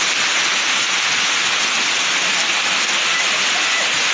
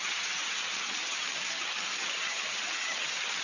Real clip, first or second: first